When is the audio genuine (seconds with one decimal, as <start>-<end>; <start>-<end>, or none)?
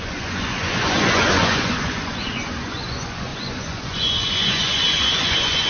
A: none